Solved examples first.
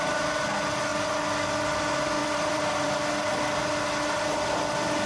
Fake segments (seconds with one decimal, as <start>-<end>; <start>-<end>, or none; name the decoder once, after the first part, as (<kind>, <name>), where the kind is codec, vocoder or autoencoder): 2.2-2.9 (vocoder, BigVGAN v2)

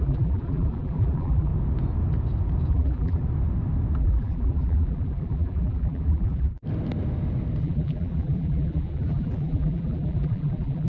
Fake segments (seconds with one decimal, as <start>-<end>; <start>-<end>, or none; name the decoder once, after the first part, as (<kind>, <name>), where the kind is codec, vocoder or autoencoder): 0.0-1.5 (vocoder, BigVGAN v2); 2.7-3.2; 4.0-6.6; 7.6-10.9

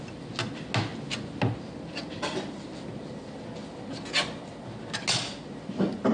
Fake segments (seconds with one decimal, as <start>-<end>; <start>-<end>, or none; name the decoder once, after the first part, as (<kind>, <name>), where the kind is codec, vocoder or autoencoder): none

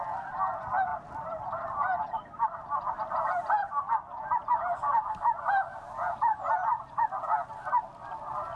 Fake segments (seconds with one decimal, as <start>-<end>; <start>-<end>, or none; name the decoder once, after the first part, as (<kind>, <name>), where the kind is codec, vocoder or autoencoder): 0.9-4.2 (vocoder, BigVGAN v2)